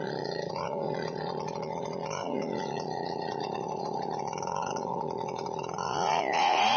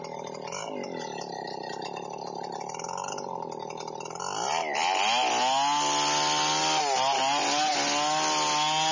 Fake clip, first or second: first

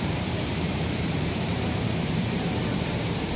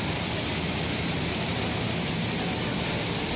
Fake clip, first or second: first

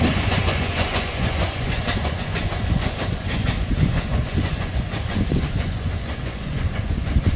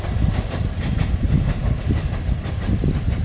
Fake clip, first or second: first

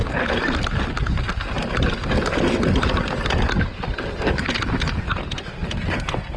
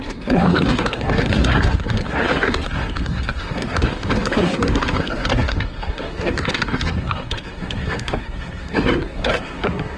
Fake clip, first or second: second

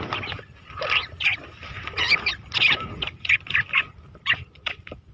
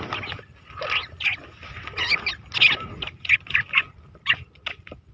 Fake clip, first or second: first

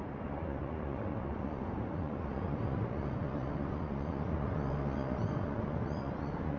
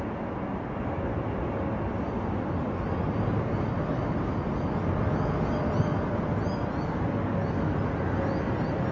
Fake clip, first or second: first